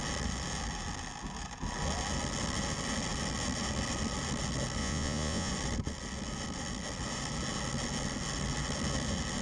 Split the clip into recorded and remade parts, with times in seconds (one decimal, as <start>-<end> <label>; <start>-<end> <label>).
0.0-4.8 recorded; 4.8-5.5 remade; 5.5-9.4 recorded